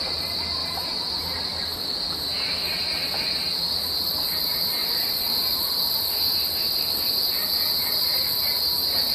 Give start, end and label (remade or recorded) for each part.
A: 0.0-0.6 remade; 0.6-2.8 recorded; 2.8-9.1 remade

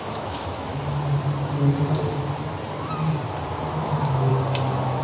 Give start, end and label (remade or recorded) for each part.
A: 0.0-0.7 remade; 0.7-3.7 recorded; 3.7-4.3 remade; 4.3-5.0 recorded

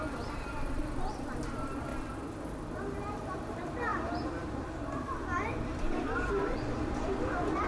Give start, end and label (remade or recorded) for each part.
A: 0.0-1.9 remade; 1.9-2.8 recorded; 2.8-7.7 remade

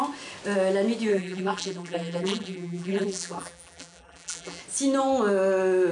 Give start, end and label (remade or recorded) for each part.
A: 0.0-1.1 recorded; 1.1-4.6 remade; 4.6-5.9 recorded

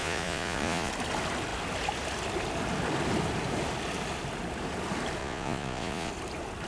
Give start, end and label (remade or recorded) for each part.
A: 0.0-0.9 remade; 0.9-5.2 recorded; 5.2-6.1 remade; 6.1-6.7 recorded

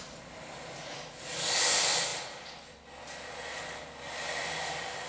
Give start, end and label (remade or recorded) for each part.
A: 0.0-5.1 recorded

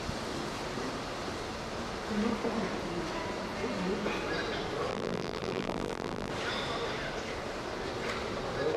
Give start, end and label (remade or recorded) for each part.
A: 0.0-4.9 recorded; 4.9-6.3 remade; 6.3-8.8 recorded

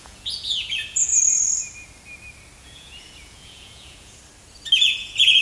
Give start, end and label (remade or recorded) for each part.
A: 0.0-1.1 remade; 1.1-2.6 recorded; 2.6-4.2 remade; 4.2-4.8 recorded; 4.8-5.4 remade